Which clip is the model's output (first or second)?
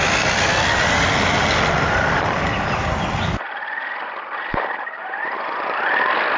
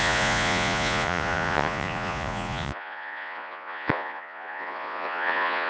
second